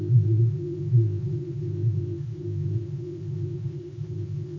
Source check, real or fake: fake